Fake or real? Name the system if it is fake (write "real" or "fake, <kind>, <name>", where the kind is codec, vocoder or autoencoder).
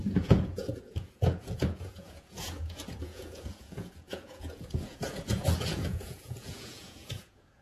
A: fake, vocoder, Vocos